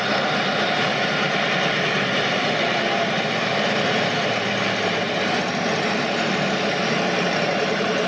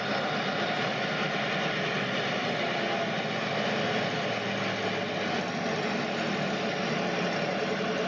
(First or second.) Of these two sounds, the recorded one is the second